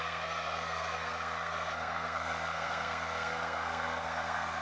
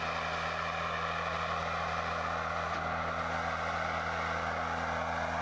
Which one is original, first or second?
second